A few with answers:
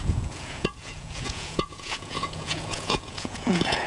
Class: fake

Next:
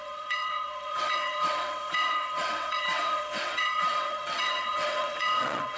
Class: fake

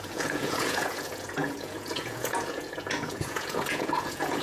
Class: fake